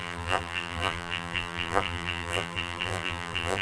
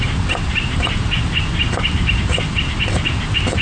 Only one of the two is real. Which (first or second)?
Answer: second